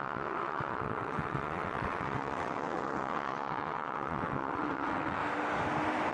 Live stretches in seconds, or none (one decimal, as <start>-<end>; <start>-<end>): 5.2-6.1